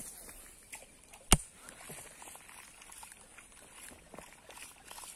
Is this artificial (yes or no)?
no